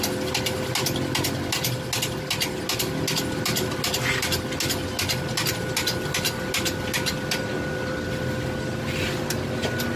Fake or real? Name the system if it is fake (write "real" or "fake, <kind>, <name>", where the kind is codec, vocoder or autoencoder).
real